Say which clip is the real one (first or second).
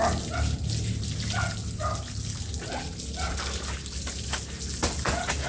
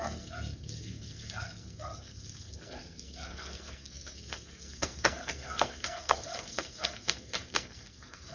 first